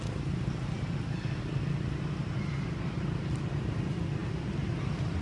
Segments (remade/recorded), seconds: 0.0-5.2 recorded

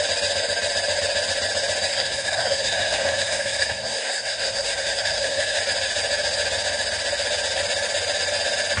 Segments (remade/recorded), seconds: 0.0-1.9 recorded; 1.9-5.6 remade; 5.6-8.8 recorded